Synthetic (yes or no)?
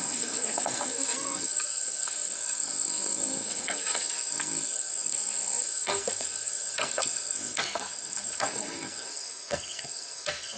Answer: yes